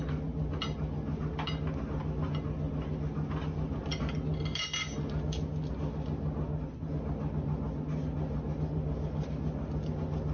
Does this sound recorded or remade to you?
recorded